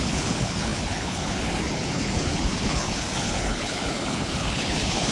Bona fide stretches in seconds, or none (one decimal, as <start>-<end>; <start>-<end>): none

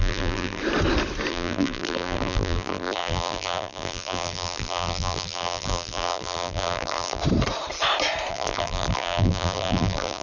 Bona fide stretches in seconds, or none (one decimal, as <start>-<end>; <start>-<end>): 0.6-1.3; 7.2-8.3

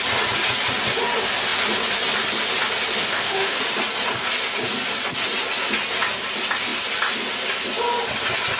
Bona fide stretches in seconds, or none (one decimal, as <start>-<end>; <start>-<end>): 0.0-3.0; 3.6-8.6

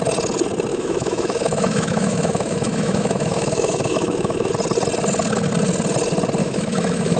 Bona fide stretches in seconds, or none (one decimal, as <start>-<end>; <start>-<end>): 0.0-0.7; 4.5-6.4